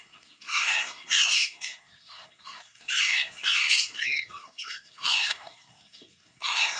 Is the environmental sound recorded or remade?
remade